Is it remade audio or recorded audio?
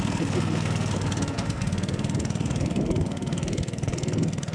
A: remade